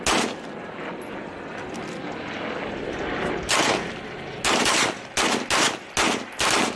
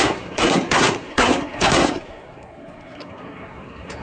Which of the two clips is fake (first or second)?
second